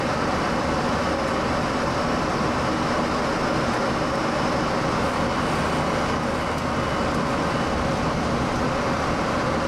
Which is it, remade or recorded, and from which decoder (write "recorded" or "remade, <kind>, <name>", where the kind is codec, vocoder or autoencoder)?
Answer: recorded